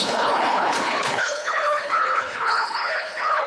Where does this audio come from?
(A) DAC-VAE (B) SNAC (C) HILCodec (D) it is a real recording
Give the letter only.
C